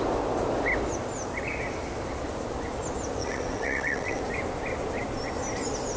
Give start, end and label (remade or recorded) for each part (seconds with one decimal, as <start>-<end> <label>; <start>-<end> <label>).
0.0-3.2 recorded; 3.2-4.2 remade; 4.2-6.0 recorded